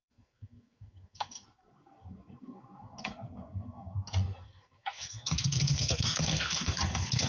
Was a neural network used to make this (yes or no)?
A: yes